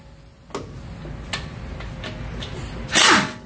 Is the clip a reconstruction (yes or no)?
no